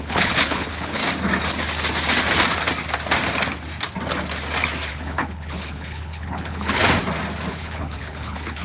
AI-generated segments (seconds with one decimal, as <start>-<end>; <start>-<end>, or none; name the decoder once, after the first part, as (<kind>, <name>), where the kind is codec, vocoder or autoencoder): 0.0-1.0 (codec, HILCodec); 4.9-6.8; 7.5-8.6